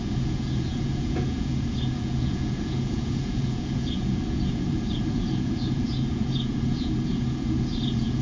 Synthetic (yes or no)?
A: yes